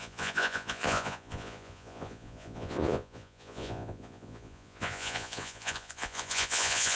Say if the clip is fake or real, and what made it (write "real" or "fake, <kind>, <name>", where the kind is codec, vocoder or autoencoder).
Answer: fake, vocoder, Vocos